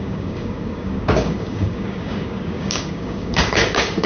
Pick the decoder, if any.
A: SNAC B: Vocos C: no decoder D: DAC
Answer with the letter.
D